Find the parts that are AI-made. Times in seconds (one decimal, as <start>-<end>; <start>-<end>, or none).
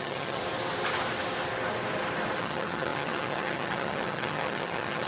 0.0-0.4; 2.4-5.1